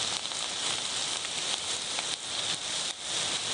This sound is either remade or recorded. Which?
recorded